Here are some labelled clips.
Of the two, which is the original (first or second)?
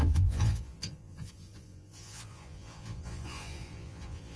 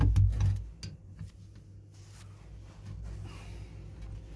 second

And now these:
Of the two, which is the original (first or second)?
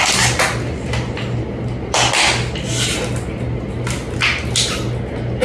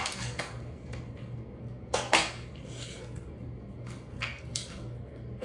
first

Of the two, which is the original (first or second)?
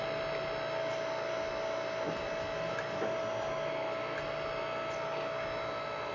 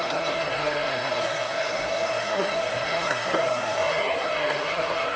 first